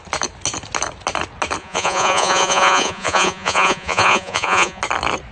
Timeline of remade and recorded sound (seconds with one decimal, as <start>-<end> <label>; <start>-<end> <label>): 0.0-1.6 recorded; 1.6-4.8 remade; 4.8-5.3 recorded